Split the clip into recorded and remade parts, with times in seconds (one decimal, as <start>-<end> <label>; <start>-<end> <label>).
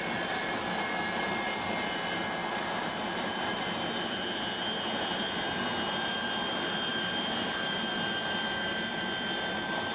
0.0-2.4 recorded; 2.4-3.6 remade; 3.6-6.9 recorded; 6.9-7.6 remade; 7.6-9.9 recorded